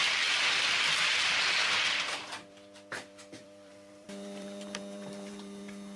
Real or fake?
fake